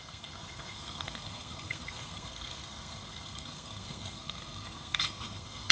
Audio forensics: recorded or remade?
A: remade